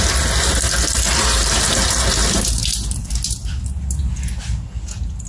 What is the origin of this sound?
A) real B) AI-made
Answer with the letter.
A